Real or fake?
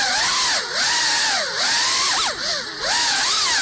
real